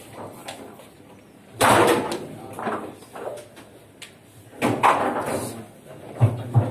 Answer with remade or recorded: recorded